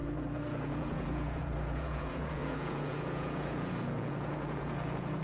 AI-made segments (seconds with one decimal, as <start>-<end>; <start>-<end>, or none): 0.0-5.2